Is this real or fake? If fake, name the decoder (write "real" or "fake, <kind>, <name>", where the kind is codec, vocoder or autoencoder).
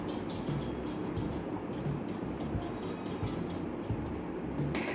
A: real